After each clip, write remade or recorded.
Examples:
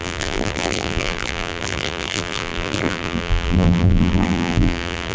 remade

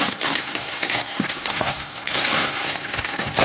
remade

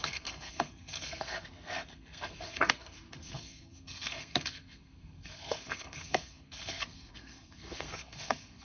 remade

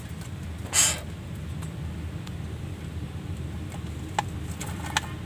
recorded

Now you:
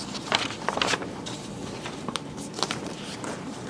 remade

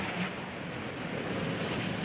recorded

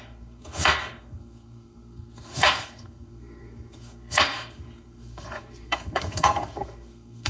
remade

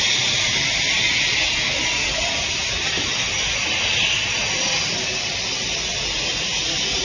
recorded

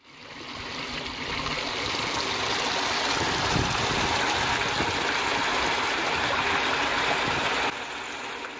recorded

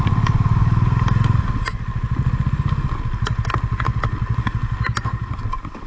recorded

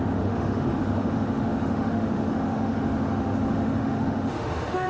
remade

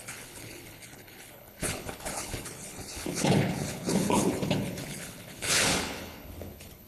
remade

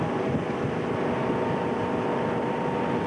recorded